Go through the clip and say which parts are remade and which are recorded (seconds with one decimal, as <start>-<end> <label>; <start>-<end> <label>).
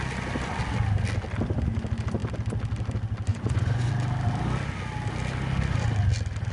0.0-3.3 recorded; 3.3-3.9 remade; 3.9-6.5 recorded